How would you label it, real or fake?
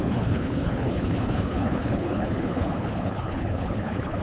fake